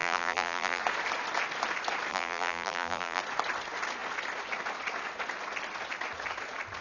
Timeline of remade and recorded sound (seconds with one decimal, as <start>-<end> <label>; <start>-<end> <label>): 0.0-0.8 remade; 0.8-2.1 recorded; 2.1-3.2 remade; 3.2-6.8 recorded